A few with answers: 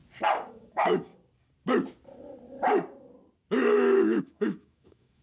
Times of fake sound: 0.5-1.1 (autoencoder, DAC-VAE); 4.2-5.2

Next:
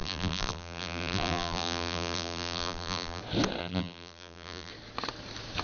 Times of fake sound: 0.0-3.2 (vocoder, BigVGAN v2); 3.6-4.7